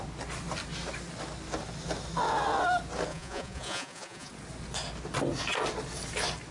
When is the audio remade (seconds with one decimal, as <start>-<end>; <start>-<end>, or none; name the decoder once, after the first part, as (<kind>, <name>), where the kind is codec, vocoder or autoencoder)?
3.1-4.3 (vocoder, Vocos)